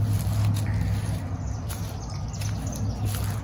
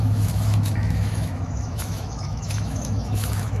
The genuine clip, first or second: first